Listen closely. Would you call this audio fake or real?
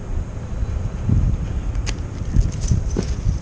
real